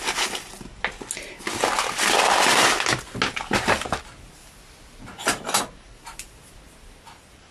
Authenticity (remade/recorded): recorded